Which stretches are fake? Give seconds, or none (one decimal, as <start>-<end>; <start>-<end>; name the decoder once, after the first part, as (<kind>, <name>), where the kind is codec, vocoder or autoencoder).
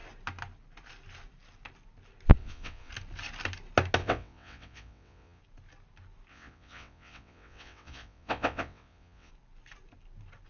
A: 2.4-2.9 (vocoder, WaveNeXt); 4.0-5.4; 6.3-9.3